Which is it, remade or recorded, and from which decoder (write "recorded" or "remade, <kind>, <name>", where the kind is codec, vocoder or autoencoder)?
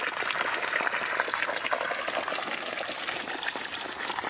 recorded